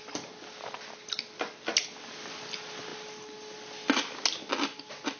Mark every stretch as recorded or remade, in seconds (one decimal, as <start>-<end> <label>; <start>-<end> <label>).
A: 0.0-5.2 recorded